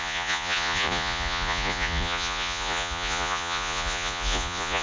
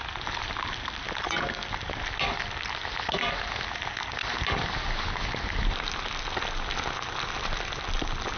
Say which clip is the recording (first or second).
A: second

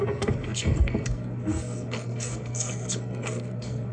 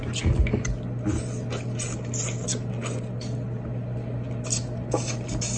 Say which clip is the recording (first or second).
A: second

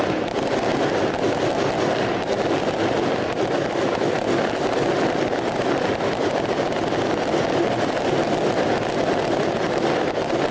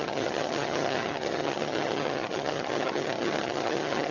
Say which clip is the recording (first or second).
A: first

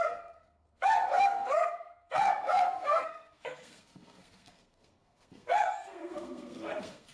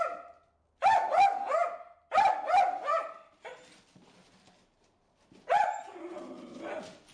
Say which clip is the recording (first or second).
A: second